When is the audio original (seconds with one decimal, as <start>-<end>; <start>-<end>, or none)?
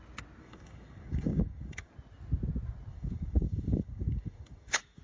0.0-0.4; 1.9-2.9